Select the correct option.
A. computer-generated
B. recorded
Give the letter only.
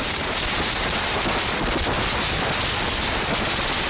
B